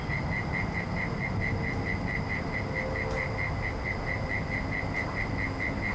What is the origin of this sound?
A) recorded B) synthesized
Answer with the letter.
A